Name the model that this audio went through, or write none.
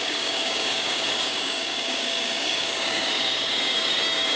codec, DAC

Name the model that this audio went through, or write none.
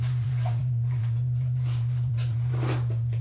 vocoder, BigVGAN v2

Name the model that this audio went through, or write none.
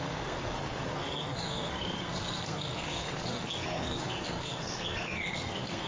codec, SNAC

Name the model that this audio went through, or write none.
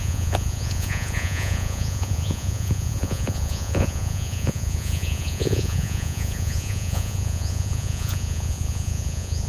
vocoder, Vocos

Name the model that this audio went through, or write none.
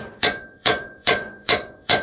vocoder, Vocos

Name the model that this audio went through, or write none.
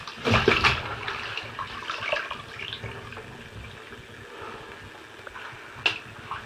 none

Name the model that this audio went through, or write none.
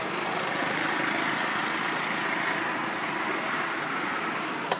none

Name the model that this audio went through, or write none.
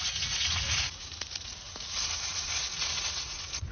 vocoder, Vocos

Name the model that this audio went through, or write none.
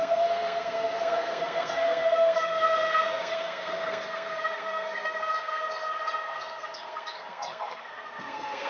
codec, SNAC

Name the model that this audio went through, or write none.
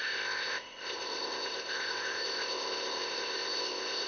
codec, ZipCodec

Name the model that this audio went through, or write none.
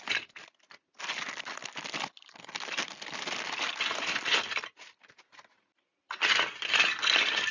none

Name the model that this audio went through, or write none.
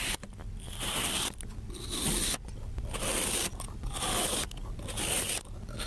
none